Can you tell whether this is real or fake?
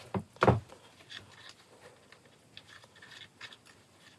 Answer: real